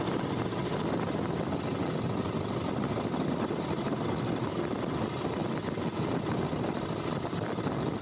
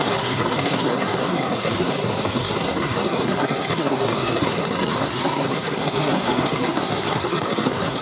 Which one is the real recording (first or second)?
first